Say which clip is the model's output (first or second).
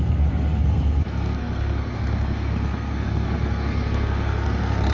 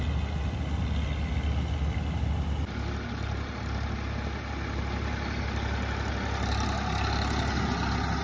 first